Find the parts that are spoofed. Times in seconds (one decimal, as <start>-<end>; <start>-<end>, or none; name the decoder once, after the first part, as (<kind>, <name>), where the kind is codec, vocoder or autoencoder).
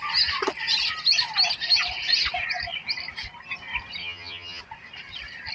4.0-4.6 (vocoder, HiFi-GAN)